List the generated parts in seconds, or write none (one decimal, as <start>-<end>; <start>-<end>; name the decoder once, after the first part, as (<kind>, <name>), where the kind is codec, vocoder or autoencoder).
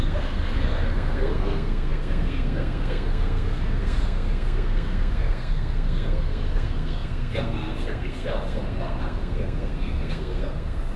0.0-11.0 (codec, SNAC)